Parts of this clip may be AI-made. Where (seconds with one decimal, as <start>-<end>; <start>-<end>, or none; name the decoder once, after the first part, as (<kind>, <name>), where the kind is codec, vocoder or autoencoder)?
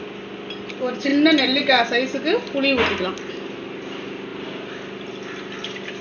4.3-5.1 (vocoder, BigVGAN v2)